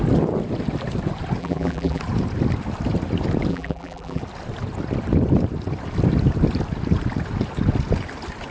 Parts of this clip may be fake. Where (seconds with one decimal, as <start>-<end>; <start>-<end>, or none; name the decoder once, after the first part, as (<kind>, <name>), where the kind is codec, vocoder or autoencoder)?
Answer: 1.4-2.0 (vocoder, BigVGAN v2); 3.5-4.2